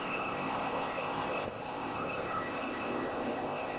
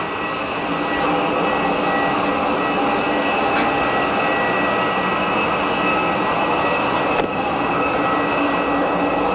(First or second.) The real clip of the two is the second